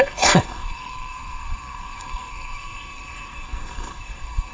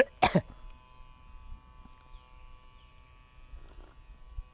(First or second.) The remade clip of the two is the first